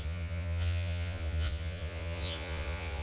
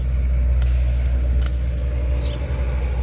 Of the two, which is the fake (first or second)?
first